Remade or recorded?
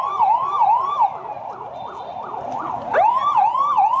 recorded